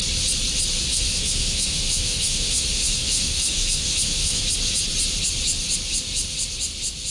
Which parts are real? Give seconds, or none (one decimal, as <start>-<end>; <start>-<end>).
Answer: 0.0-0.9; 4.4-7.1